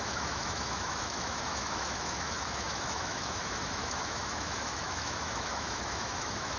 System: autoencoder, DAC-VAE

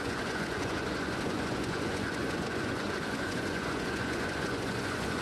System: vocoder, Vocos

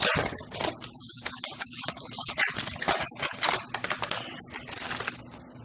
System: none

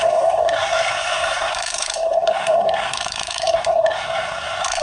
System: codec, SNAC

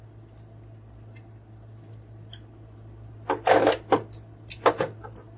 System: none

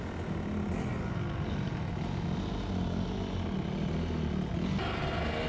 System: none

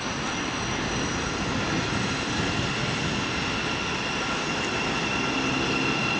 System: none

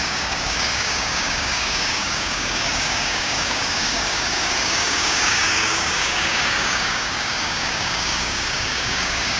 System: codec, DAC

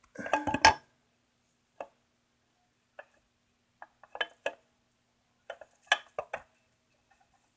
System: none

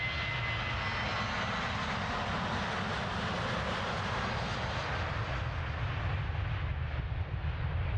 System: none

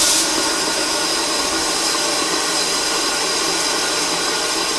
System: none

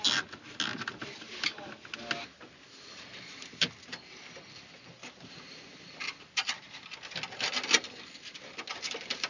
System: none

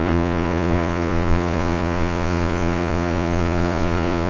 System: vocoder, Vocos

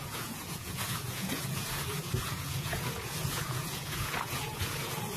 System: vocoder, Vocos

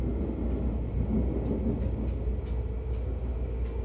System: none